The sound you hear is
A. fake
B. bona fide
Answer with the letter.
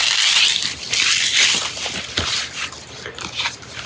B